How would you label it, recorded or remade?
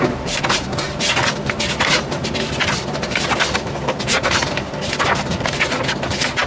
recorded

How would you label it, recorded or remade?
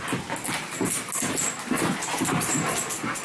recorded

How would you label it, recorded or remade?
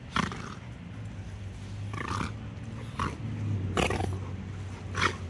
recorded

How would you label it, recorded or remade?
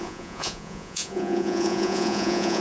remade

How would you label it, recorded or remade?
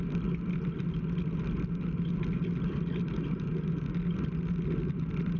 recorded